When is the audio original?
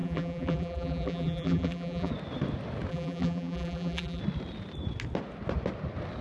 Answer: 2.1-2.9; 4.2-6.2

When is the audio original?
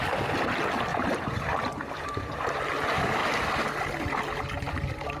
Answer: 0.0-0.9; 2.7-5.2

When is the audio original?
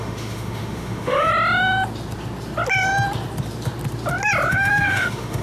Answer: 1.3-4.5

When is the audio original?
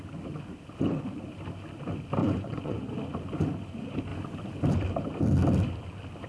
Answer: 0.0-2.2; 2.9-6.3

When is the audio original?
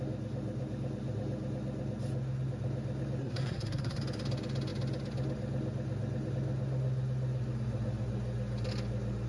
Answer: 0.0-3.2; 4.0-9.3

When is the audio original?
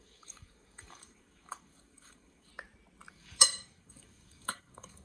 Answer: 2.5-3.1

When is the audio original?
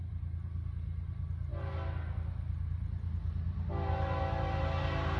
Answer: 0.0-5.2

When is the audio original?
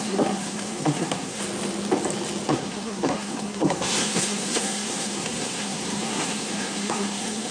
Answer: 1.4-2.5